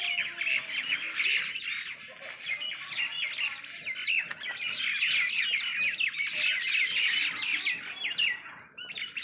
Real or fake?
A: real